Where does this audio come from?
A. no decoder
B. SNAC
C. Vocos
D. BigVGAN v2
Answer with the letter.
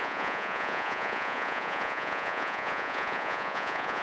C